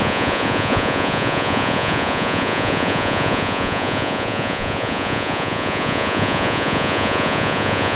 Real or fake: fake